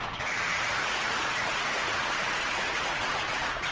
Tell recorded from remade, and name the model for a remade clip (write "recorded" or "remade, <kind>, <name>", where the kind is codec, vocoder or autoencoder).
remade, vocoder, Vocos